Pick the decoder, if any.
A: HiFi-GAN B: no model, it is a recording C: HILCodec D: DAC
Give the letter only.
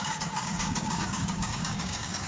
D